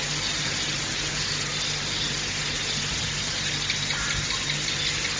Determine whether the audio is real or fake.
real